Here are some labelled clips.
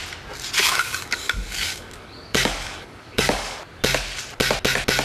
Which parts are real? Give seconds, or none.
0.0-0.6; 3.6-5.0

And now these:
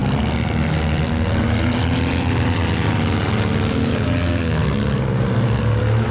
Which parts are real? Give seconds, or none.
0.0-3.7; 4.6-6.1